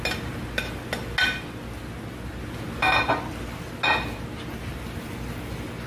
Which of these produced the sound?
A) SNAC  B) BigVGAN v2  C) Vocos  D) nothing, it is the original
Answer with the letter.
D